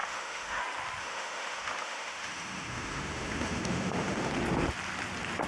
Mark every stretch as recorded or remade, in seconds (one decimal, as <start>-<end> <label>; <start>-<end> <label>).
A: 0.0-0.6 remade; 0.6-1.0 recorded; 1.0-4.3 remade; 4.3-5.5 recorded